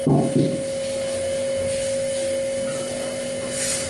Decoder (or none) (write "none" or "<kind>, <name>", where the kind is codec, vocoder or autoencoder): none